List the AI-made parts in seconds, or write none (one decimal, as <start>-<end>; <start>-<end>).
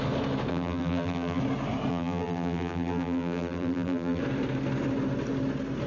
0.5-1.4; 1.9-4.2